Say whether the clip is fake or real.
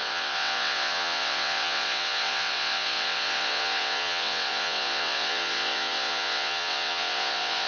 fake